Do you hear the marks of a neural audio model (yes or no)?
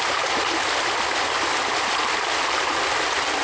no